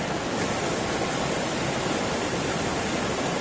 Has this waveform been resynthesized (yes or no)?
no